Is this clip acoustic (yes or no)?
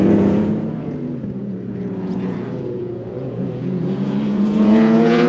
no